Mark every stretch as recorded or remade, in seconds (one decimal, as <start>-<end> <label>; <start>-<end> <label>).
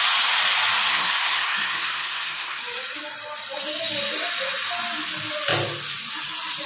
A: 0.0-0.9 recorded; 0.9-2.6 remade; 2.6-6.7 recorded